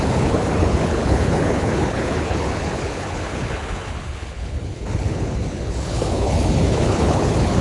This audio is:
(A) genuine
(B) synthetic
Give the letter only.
B